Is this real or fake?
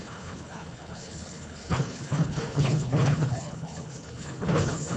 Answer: fake